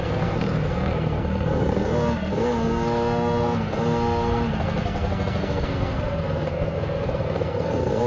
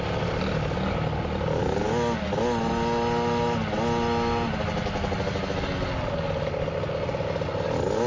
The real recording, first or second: second